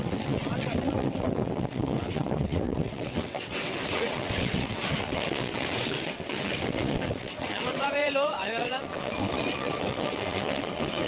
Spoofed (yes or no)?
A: yes